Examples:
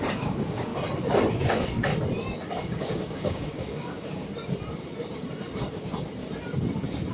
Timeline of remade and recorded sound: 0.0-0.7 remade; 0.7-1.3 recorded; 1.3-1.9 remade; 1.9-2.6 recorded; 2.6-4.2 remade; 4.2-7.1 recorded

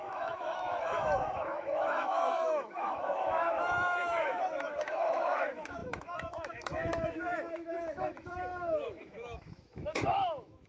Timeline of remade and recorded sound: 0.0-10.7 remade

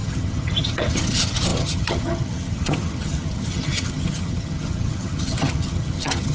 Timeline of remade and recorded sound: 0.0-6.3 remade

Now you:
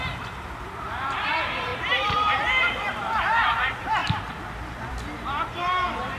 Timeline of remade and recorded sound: 0.0-6.2 remade

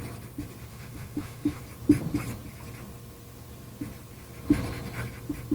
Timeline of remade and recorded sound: 0.0-0.7 recorded; 0.7-1.6 remade; 1.6-5.5 recorded

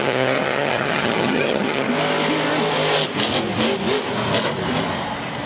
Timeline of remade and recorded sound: 0.0-1.9 remade; 1.9-5.5 recorded